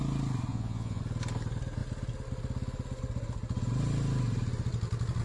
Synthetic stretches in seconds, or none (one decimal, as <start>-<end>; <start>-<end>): 0.5-1.0